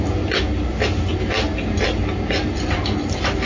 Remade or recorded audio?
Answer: recorded